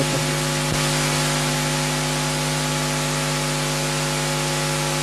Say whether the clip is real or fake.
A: real